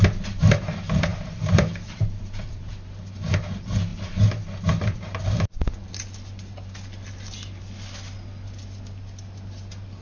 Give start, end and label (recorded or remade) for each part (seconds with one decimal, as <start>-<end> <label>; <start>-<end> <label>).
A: 0.0-1.1 recorded; 1.1-2.7 remade; 2.7-10.0 recorded